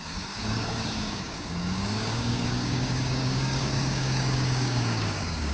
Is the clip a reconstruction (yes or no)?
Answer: yes